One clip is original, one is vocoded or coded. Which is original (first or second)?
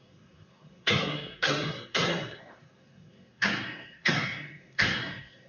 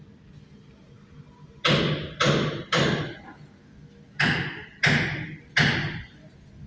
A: second